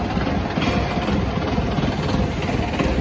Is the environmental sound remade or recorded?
recorded